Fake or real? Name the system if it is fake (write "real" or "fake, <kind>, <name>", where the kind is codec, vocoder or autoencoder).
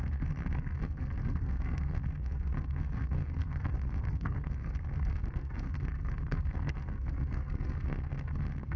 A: fake, codec, SNAC